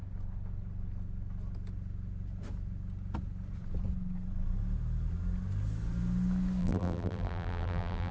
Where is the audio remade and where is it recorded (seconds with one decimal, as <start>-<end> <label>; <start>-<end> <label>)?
0.0-6.6 recorded; 6.6-8.1 remade